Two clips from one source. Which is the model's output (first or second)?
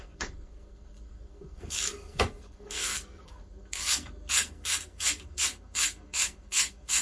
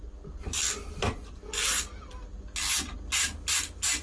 first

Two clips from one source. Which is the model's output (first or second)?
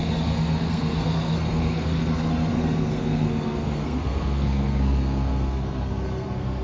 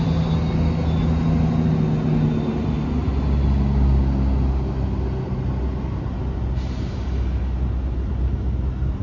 first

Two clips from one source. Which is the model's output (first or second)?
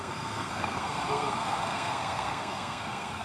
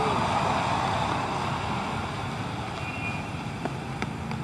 first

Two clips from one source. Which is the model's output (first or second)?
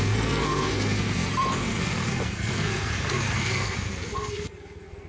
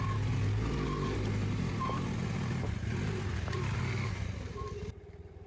first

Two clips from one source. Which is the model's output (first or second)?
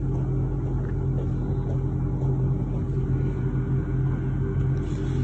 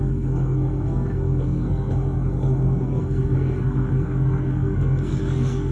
second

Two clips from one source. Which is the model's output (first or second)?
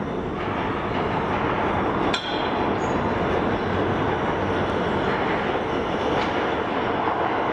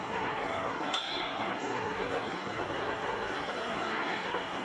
second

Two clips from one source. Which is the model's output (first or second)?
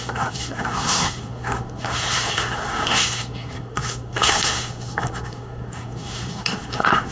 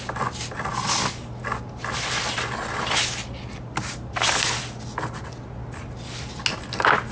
first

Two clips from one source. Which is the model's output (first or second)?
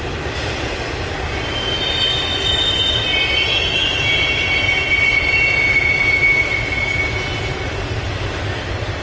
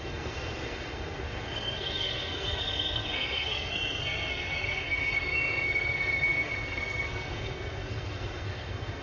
second